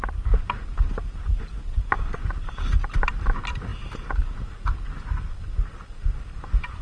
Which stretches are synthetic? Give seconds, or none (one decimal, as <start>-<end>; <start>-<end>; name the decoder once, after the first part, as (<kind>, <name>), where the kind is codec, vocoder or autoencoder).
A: none